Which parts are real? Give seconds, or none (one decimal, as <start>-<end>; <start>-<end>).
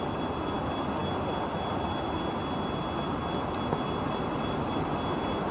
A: 0.0-5.5